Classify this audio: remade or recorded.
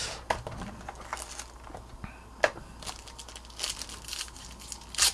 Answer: recorded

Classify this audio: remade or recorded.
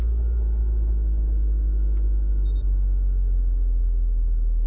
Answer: recorded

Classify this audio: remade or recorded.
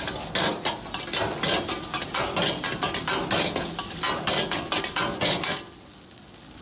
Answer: recorded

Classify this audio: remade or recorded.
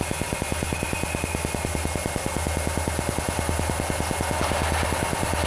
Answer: recorded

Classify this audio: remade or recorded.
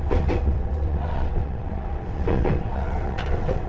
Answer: remade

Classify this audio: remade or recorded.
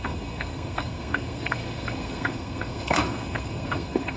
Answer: remade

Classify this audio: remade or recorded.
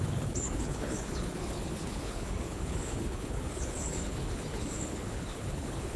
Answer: remade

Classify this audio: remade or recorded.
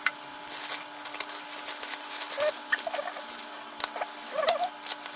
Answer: recorded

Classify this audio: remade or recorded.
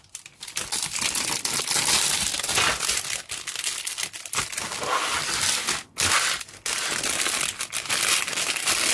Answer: recorded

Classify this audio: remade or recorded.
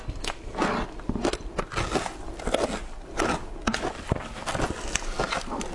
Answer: recorded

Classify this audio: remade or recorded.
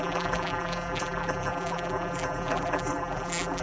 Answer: remade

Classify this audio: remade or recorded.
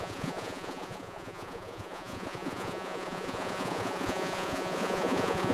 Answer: remade